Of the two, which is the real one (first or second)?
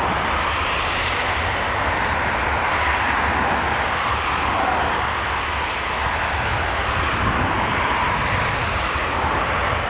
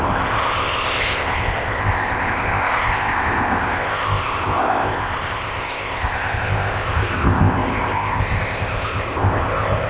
first